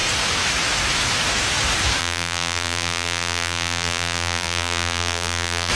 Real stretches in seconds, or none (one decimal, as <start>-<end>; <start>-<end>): 0.0-2.0